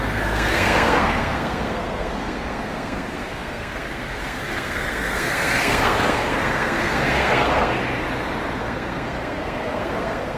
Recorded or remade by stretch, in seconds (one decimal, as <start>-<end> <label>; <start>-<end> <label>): 0.0-7.8 remade; 7.8-8.6 recorded; 8.6-10.4 remade